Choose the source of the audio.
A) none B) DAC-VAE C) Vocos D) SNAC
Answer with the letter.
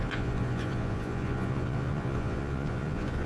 C